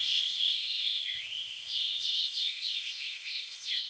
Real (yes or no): no